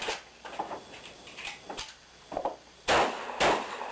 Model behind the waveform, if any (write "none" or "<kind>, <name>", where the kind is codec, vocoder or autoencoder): none